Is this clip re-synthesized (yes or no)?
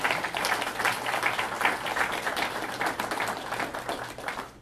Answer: no